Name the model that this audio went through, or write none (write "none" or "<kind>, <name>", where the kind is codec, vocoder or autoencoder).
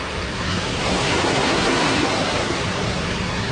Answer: codec, SNAC